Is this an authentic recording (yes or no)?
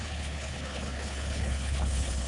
no